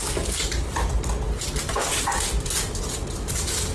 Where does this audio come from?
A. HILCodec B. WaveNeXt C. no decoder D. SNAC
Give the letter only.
C